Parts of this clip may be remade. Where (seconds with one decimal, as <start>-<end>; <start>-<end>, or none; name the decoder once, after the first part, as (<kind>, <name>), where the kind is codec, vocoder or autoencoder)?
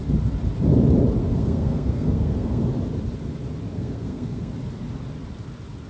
1.2-2.6 (codec, SNAC); 3.7-4.5